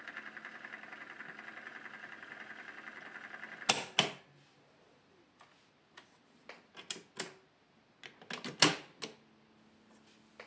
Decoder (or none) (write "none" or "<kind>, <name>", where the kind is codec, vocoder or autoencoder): none